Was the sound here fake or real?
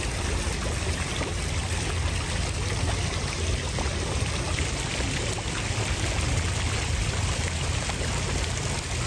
real